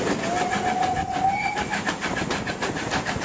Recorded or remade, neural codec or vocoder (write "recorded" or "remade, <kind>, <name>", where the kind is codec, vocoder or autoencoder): recorded